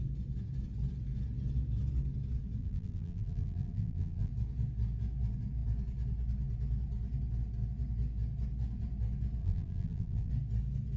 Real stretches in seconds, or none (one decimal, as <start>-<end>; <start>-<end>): 0.0-2.6; 4.3-9.4; 10.3-11.0